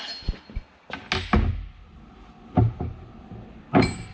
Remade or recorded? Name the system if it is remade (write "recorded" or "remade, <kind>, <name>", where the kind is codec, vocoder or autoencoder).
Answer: recorded